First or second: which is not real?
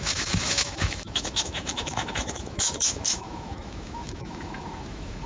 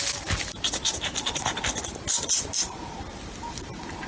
first